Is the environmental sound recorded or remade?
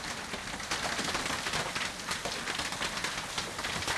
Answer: recorded